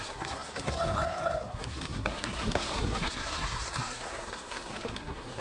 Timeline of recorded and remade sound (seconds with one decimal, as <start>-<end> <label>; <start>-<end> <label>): 0.0-5.4 remade